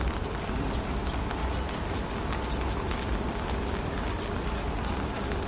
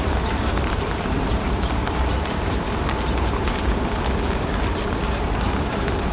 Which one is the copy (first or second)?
second